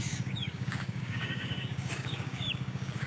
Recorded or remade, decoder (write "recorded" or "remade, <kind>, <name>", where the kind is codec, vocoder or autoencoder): remade, codec, DAC